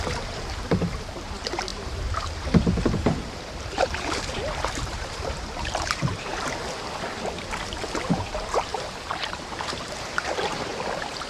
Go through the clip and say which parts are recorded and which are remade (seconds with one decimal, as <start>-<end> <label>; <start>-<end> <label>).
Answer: 0.0-6.3 remade; 6.3-8.1 recorded; 8.1-8.7 remade; 8.7-9.2 recorded; 9.2-11.3 remade